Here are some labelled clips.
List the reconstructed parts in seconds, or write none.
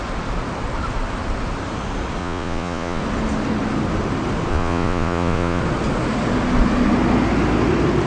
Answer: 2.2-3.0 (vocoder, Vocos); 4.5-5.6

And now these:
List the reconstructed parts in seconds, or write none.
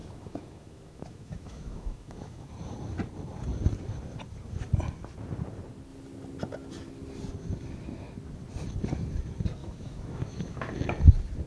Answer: 0.0-2.5 (autoencoder, DAC-VAE); 9.6-10.7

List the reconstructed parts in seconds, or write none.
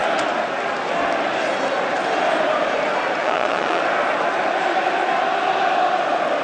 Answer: 3.2-3.8 (vocoder, Vocos)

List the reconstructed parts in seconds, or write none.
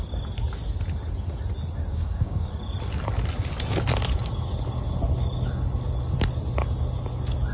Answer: 1.9-2.5 (codec, DAC)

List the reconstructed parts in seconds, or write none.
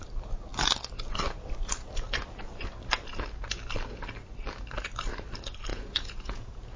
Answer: 5.7-6.8 (vocoder, Vocos)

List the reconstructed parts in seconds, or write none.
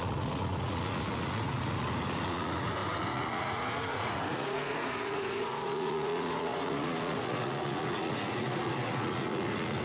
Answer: 0.0-9.8 (vocoder, Vocos)